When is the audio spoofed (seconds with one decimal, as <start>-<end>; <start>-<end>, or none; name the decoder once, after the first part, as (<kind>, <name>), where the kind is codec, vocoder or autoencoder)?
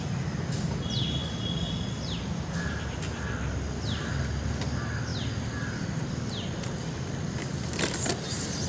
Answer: none